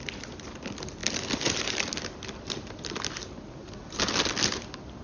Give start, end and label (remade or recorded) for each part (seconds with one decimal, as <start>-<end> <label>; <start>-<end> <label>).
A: 0.0-5.0 recorded